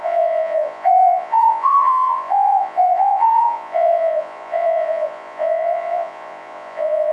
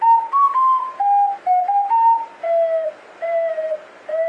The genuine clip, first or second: second